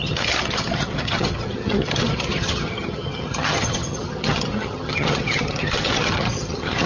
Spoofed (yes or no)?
yes